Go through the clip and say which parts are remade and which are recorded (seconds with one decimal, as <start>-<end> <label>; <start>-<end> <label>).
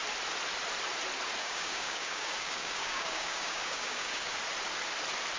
0.0-1.4 recorded; 1.4-4.4 remade; 4.4-5.4 recorded